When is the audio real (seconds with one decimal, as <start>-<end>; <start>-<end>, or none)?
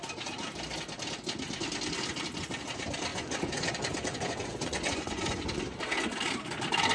0.0-3.1; 5.6-6.9